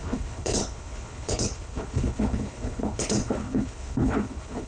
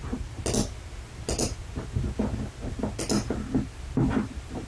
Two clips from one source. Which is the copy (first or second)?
first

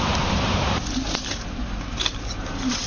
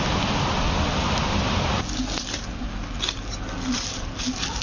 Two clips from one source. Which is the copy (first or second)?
first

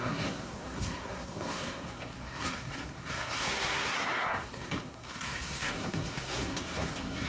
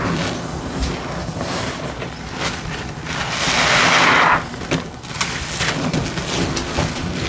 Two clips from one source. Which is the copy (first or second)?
first